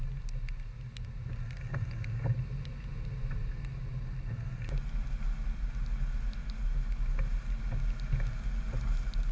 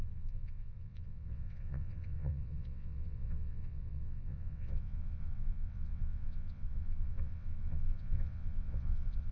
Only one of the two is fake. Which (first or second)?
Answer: second